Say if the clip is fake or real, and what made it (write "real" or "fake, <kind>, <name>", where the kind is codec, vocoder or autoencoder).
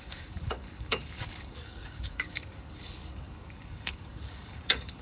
fake, codec, DAC